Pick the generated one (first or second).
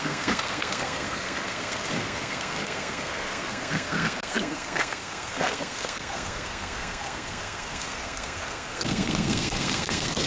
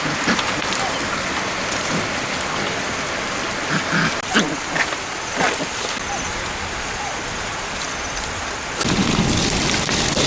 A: first